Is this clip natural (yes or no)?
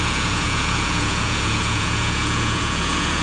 no